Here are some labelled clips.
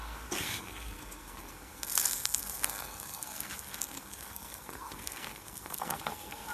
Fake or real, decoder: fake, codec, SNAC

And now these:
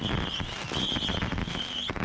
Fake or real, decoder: real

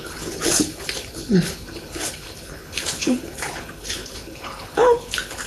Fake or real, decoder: fake, codec, HILCodec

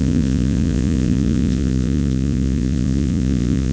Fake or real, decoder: fake, vocoder, Vocos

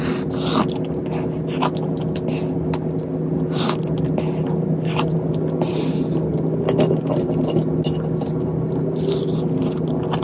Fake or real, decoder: real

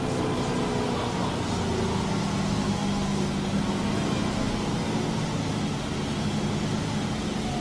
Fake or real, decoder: real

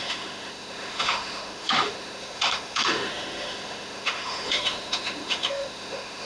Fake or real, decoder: fake, autoencoder, DAC-VAE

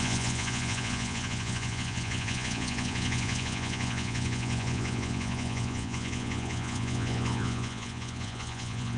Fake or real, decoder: fake, vocoder, Vocos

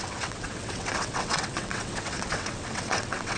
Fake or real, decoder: fake, vocoder, WaveNeXt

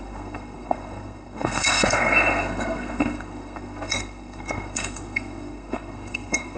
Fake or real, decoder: fake, codec, SNAC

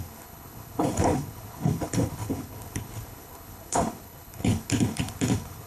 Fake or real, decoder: fake, codec, HILCodec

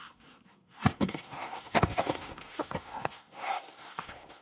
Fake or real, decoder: fake, codec, SNAC